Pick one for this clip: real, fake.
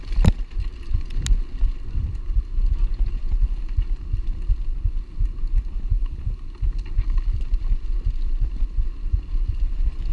real